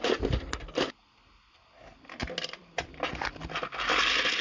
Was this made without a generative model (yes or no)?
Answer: yes